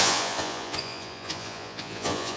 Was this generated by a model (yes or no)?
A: yes